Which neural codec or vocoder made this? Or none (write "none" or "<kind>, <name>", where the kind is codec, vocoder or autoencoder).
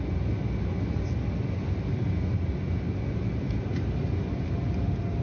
none